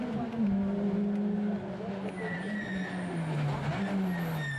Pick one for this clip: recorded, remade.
recorded